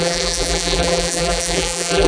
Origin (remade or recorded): remade